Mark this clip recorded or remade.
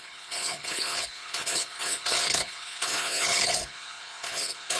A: remade